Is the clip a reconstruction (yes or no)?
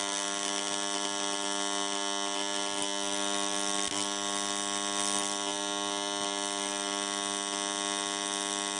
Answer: no